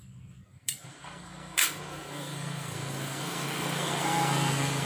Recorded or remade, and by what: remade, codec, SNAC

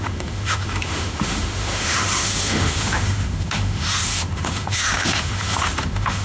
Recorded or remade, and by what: remade, autoencoder, DAC-VAE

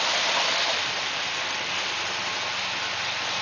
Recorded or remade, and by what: recorded